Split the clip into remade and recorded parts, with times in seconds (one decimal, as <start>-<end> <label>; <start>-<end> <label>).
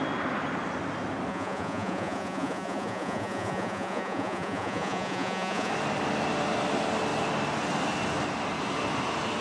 0.0-1.3 recorded; 1.3-5.7 remade; 5.7-9.4 recorded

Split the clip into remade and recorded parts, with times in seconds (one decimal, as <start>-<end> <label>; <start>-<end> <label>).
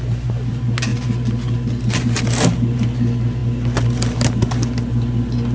0.0-5.5 recorded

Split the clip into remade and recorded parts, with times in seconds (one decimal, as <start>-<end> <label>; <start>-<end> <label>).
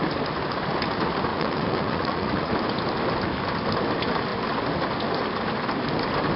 0.0-1.3 recorded; 1.3-2.5 remade; 2.5-6.4 recorded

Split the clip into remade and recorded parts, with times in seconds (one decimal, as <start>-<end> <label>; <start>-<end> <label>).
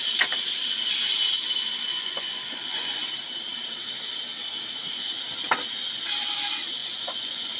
0.0-1.9 recorded; 1.9-3.0 remade; 3.0-6.8 recorded; 6.8-7.6 remade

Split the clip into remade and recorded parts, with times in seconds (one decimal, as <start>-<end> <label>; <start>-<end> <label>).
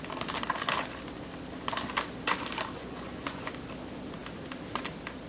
0.0-2.8 recorded; 2.8-3.5 remade; 3.5-5.3 recorded